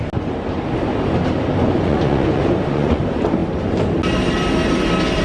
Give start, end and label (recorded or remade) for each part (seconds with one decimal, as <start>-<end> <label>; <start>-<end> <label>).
0.0-1.6 recorded; 1.6-3.0 remade; 3.0-5.2 recorded